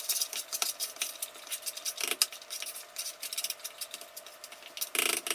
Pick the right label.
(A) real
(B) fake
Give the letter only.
A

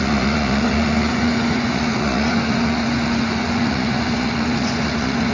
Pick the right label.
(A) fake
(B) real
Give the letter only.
A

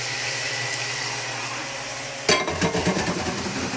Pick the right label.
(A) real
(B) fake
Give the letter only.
A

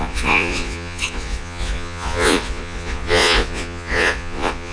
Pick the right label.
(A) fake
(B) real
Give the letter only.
A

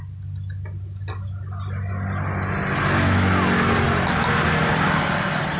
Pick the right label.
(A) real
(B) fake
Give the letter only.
A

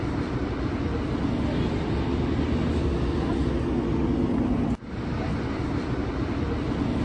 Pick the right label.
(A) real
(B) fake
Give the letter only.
A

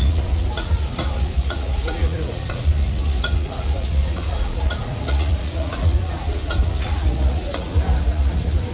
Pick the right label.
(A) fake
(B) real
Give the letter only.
A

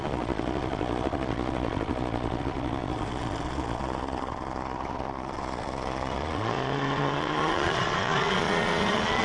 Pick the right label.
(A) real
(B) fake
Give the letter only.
B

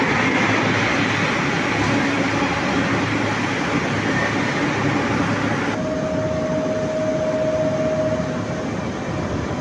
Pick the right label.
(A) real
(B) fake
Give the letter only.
A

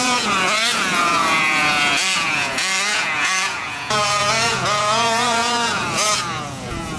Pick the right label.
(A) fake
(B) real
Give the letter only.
A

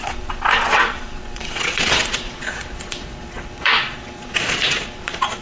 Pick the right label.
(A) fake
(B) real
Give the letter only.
A